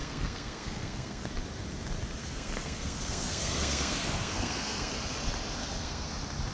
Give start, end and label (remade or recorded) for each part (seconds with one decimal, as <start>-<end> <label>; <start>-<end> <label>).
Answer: 0.0-1.3 remade; 1.3-2.2 recorded; 2.2-4.9 remade; 4.9-5.6 recorded; 5.6-6.1 remade; 6.1-6.5 recorded